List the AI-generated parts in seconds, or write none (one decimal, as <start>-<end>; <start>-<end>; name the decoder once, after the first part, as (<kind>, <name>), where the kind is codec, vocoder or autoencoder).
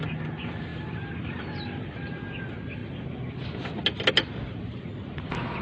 none